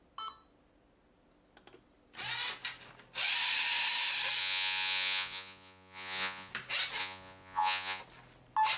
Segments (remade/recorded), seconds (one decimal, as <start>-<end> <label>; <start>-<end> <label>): 0.0-4.4 recorded; 4.4-6.5 remade; 6.5-7.0 recorded; 7.0-8.0 remade; 8.0-8.8 recorded